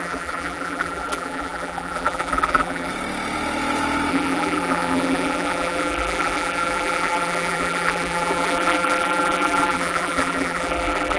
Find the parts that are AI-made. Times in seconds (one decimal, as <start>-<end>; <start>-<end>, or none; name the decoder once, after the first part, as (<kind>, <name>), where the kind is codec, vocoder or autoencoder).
0.0-2.9 (vocoder, BigVGAN v2); 4.1-11.2